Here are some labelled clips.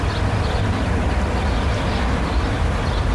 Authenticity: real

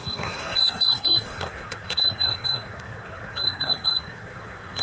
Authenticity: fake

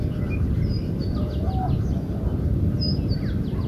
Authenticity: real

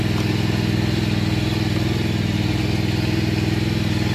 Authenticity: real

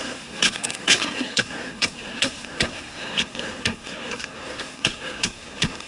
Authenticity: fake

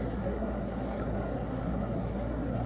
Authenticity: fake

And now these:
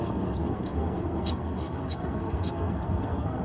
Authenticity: fake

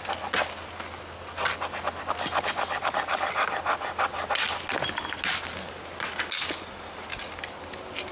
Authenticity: real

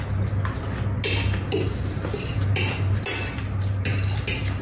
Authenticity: real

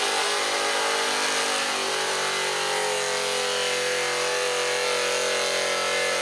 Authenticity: real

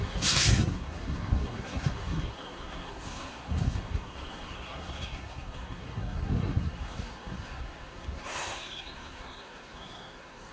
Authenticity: fake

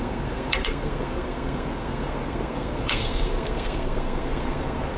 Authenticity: fake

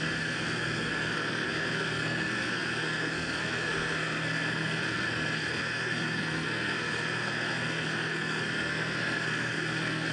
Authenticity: fake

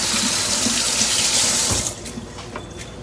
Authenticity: real